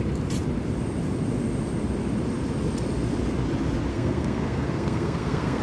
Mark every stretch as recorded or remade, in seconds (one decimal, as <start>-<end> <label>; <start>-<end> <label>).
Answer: 0.0-3.9 recorded; 3.9-5.6 remade